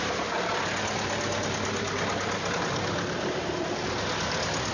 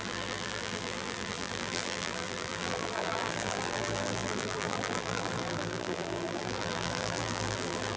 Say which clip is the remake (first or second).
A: second